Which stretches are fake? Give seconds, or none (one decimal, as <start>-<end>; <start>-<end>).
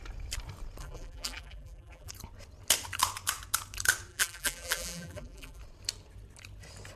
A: 0.8-2.1; 4.1-5.6